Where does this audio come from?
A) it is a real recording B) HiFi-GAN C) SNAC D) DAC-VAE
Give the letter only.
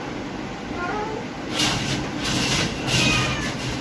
A